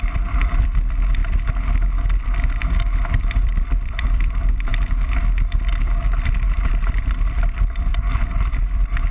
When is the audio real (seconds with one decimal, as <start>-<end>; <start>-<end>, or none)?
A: 1.2-3.2; 4.7-7.0